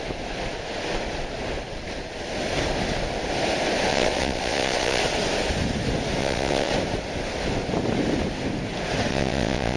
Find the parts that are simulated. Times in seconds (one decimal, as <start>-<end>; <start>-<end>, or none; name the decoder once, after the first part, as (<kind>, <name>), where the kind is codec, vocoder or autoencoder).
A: 3.9-5.0 (vocoder, WaveNeXt); 6.2-6.7; 9.1-9.8